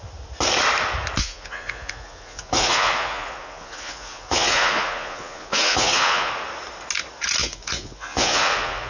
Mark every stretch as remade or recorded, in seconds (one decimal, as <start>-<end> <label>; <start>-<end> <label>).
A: 0.0-1.2 recorded; 1.2-6.3 remade; 6.3-7.4 recorded; 7.4-8.9 remade